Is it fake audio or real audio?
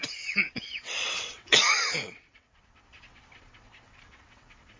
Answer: fake